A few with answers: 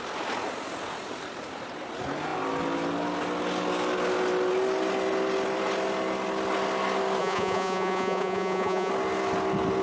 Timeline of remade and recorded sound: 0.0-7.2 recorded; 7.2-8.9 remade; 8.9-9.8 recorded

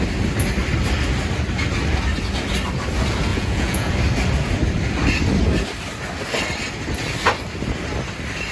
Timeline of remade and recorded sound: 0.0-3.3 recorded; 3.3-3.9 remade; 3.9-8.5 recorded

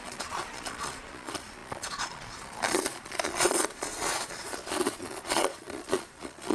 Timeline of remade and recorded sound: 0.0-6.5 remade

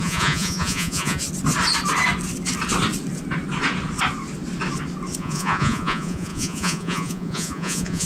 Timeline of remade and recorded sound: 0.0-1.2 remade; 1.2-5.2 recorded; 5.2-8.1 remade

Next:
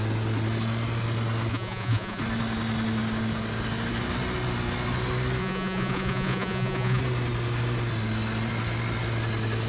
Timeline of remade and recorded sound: 0.0-1.5 recorded; 1.5-2.2 remade; 2.2-5.4 recorded; 5.4-7.0 remade; 7.0-9.7 recorded